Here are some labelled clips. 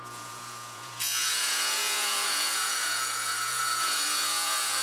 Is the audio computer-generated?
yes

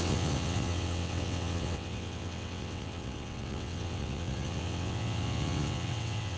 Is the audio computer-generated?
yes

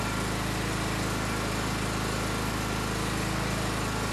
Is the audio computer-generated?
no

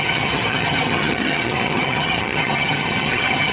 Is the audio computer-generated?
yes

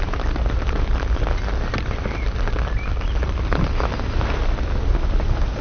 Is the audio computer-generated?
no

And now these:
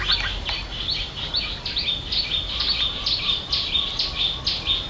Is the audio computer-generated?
no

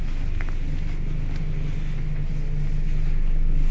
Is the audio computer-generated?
no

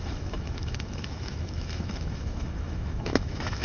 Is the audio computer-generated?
yes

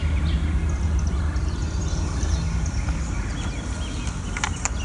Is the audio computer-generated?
no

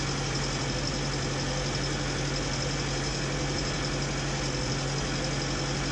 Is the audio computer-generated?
no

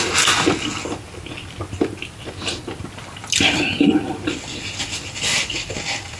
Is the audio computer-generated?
no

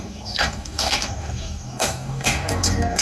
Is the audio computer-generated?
yes